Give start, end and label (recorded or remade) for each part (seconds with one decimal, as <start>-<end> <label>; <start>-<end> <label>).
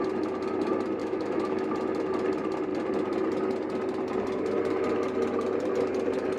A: 0.0-1.0 recorded; 1.0-1.7 remade; 1.7-6.4 recorded